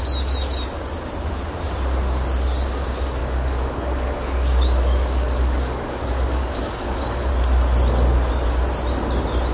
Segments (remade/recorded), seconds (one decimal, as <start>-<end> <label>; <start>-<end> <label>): 0.0-3.2 recorded; 3.2-7.3 remade; 7.3-9.5 recorded